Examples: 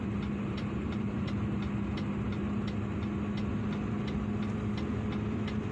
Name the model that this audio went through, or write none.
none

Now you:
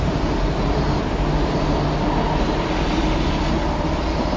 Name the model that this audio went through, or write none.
none